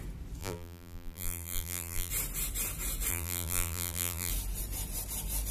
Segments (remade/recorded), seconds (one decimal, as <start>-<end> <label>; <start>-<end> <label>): 0.0-0.4 recorded; 0.4-2.1 remade; 2.1-3.1 recorded; 3.1-4.3 remade; 4.3-5.5 recorded